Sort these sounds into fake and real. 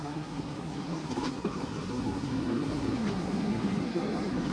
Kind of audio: fake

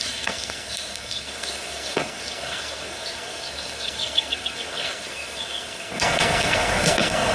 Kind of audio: fake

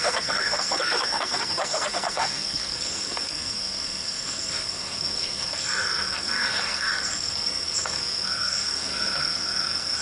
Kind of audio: fake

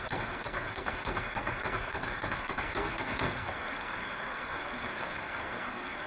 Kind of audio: fake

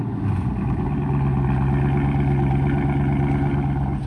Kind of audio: real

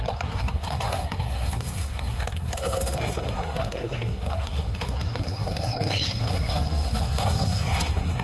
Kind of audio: fake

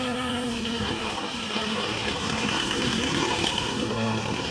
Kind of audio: fake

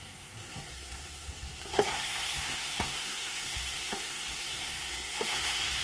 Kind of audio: fake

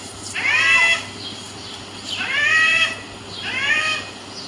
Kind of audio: real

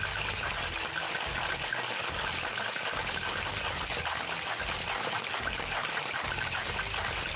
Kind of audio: real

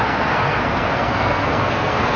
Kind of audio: fake